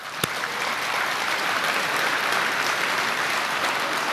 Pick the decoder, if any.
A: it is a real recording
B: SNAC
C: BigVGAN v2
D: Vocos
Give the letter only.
C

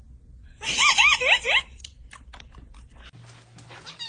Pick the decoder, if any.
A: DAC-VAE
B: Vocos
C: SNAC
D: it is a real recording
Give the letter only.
D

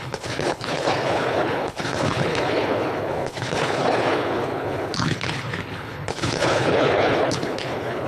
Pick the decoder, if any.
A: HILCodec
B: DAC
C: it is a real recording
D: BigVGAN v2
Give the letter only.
A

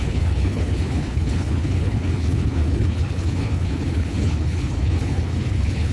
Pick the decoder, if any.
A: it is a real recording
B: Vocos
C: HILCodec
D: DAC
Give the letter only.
C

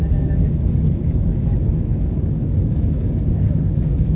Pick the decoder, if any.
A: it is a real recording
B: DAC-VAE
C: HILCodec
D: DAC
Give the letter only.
D